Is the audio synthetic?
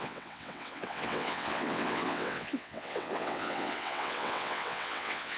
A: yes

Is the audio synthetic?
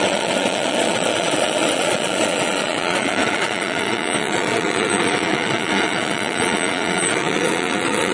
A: yes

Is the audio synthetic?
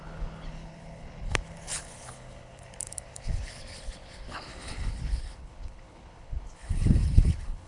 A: yes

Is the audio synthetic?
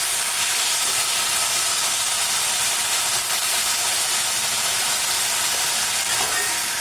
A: no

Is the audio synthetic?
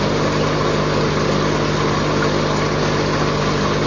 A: no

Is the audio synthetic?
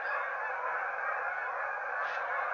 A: no